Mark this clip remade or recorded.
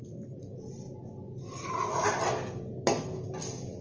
recorded